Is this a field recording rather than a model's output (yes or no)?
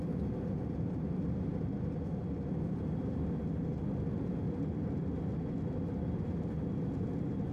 yes